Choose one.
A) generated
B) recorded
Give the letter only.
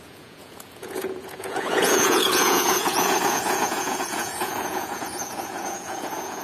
A